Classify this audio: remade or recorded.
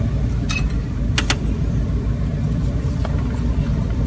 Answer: recorded